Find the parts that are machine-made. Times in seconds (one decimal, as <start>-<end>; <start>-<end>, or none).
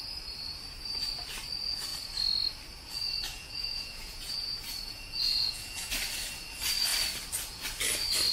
3.3-5.9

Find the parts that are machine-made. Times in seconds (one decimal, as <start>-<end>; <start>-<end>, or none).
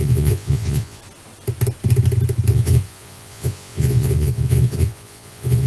0.0-1.0; 2.5-5.7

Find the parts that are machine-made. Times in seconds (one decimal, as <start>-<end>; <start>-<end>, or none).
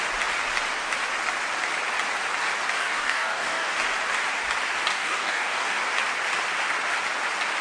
2.8-3.7; 4.9-5.8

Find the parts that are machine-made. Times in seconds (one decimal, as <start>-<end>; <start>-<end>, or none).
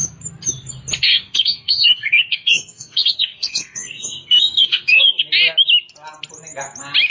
1.1-5.2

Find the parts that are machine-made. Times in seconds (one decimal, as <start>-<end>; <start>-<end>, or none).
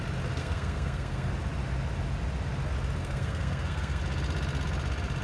0.4-1.3; 3.0-4.0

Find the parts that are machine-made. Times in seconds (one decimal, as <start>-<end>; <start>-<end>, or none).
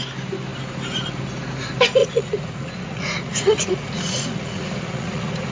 2.0-5.5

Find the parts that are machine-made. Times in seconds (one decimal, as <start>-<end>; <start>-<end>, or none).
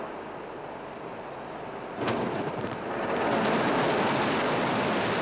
0.0-3.1